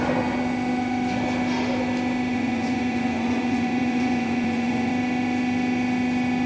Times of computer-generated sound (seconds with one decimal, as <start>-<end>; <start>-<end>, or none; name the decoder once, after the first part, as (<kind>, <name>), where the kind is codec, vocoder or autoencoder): 2.3-4.9 (vocoder, Vocos)